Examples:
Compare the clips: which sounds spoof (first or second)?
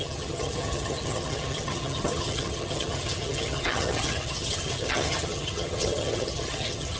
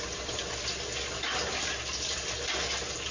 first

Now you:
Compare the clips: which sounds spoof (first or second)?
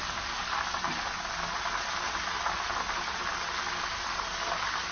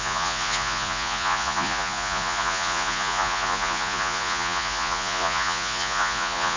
second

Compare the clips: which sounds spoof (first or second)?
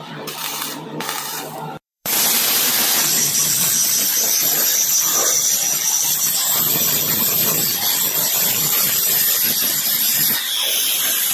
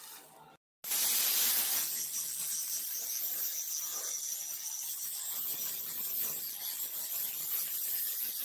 first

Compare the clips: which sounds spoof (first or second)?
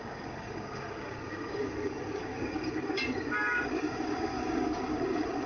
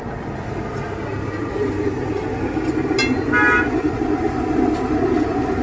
first